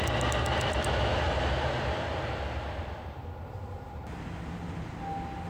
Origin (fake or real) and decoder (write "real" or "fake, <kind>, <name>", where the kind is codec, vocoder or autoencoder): real